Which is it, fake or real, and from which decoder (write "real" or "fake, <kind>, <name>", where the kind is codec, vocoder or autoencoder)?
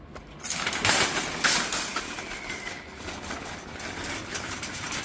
real